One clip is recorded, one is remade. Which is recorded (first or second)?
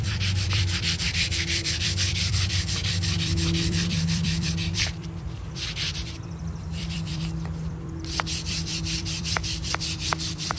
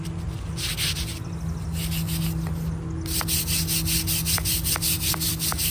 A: second